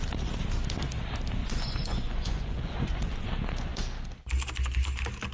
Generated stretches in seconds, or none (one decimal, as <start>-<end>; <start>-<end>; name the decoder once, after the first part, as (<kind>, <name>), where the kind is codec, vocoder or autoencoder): 1.4-3.3 (vocoder, Vocos)